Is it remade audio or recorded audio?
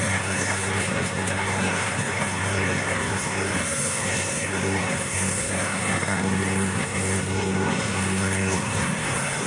remade